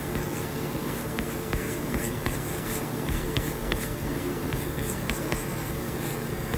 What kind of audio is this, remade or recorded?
remade